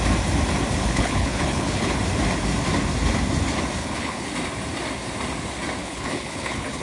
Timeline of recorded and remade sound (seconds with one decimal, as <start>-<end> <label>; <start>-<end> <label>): 0.0-0.8 recorded; 0.8-1.9 remade; 1.9-3.8 recorded; 3.8-4.3 remade; 4.3-5.8 recorded; 5.8-6.8 remade